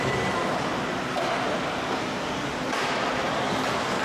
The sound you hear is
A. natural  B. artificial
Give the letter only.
A